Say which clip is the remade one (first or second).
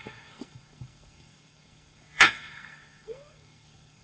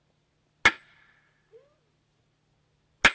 first